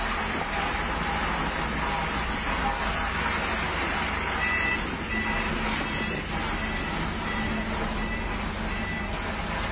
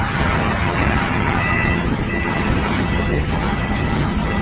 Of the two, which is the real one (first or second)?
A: first